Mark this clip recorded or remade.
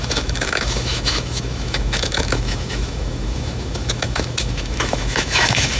remade